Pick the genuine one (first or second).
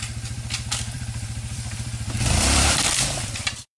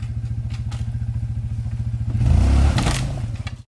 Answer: second